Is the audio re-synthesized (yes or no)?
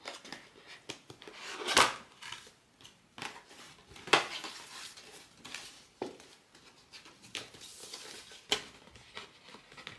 no